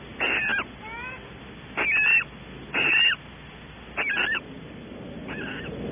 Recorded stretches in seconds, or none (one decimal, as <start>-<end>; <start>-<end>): 0.0-5.9